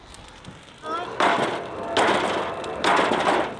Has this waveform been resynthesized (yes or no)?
no